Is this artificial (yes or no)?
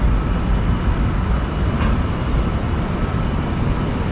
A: no